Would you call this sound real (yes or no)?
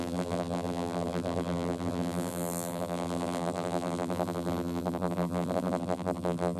no